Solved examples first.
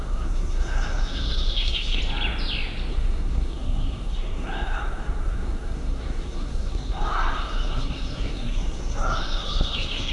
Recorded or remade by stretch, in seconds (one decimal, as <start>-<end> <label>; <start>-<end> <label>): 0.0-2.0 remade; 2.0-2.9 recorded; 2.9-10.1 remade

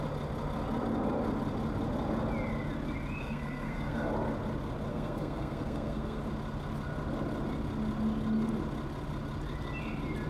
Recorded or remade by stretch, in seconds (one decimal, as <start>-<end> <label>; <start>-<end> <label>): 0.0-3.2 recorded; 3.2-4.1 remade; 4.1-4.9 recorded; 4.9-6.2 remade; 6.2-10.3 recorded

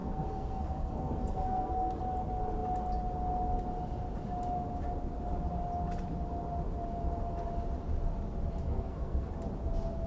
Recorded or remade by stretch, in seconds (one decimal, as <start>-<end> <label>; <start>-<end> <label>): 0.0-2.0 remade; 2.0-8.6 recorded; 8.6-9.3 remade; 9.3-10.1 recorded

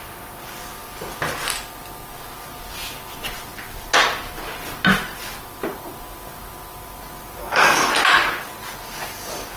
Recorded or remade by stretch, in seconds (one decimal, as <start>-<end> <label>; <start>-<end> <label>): 0.0-7.4 recorded; 7.4-7.9 remade; 7.9-9.6 recorded

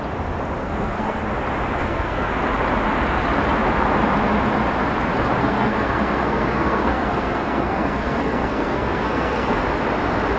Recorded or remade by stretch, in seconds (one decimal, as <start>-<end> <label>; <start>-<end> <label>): 0.0-0.6 recorded; 0.6-1.2 remade; 1.2-1.8 recorded; 1.8-2.3 remade; 2.3-5.4 recorded; 5.4-9.6 remade; 9.6-10.4 recorded

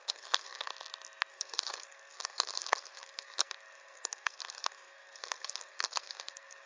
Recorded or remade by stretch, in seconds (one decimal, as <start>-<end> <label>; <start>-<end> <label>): 0.0-0.7 remade; 0.7-1.3 recorded; 1.3-6.7 remade

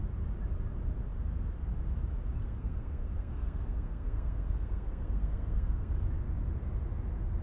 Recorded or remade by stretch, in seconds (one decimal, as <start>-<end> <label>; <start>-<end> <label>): 0.0-2.4 recorded; 2.4-5.9 remade; 5.9-7.4 recorded